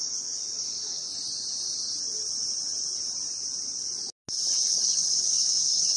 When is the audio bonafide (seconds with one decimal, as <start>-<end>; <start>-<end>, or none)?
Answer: 1.1-4.7